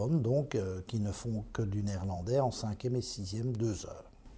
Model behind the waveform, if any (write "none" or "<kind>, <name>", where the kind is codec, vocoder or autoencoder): vocoder, BigVGAN v2